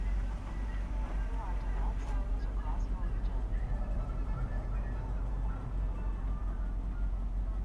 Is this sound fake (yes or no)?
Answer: no